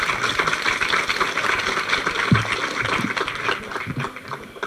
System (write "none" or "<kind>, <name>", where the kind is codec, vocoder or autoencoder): none